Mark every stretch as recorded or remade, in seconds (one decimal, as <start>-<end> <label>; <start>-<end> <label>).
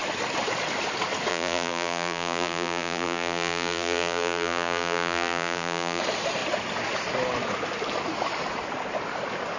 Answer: 0.0-1.3 recorded; 1.3-6.0 remade; 6.0-9.6 recorded